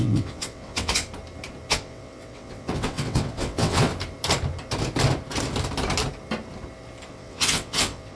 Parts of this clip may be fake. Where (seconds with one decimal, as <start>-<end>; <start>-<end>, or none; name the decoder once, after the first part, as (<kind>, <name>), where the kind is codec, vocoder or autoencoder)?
0.0-1.0 (vocoder, WaveNeXt); 1.7-3.9; 7.1-8.2